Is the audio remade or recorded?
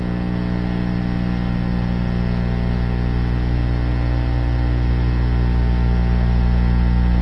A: recorded